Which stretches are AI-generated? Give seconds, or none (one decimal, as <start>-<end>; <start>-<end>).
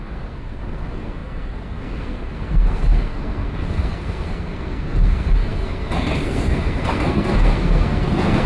0.0-8.5